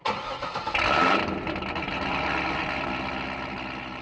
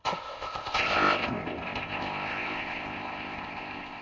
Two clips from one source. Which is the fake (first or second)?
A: second